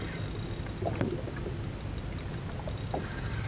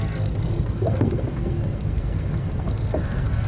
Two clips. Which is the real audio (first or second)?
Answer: first